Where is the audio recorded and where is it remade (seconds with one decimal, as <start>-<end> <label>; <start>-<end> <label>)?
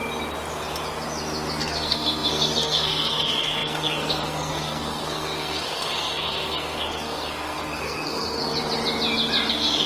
0.0-1.6 recorded; 1.6-8.4 remade; 8.4-9.5 recorded; 9.5-9.9 remade